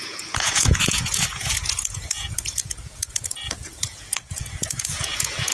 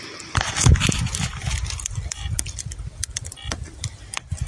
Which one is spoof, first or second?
first